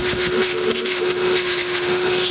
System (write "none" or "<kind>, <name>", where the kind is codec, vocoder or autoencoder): autoencoder, DAC-VAE